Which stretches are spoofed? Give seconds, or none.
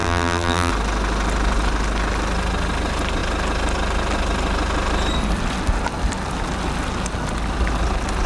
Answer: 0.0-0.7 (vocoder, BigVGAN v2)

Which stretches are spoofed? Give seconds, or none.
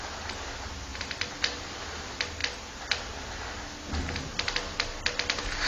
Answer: none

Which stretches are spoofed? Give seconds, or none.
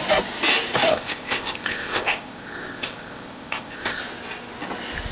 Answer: 0.9-4.0 (codec, ZipCodec)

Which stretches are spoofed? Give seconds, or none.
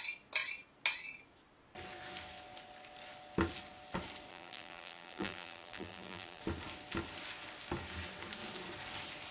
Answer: 4.3-6.4 (vocoder, BigVGAN v2)